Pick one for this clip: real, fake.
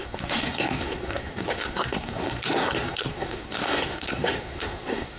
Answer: fake